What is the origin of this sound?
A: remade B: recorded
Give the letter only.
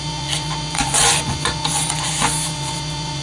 A